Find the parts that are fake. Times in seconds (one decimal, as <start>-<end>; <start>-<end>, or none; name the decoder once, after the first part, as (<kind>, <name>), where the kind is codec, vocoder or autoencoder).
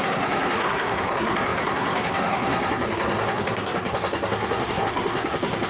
0.0-5.7 (codec, SNAC)